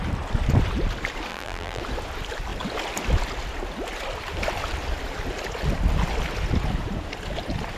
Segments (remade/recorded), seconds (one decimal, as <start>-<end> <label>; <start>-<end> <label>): 0.0-1.3 recorded; 1.3-1.8 remade; 1.8-7.8 recorded